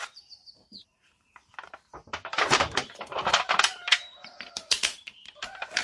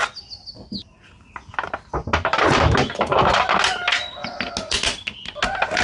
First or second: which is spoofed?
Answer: first